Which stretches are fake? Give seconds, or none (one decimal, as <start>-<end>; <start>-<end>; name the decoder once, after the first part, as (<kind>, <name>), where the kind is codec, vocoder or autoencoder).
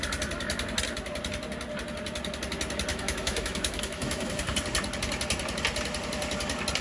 2.9-4.4 (autoencoder, DAC-VAE)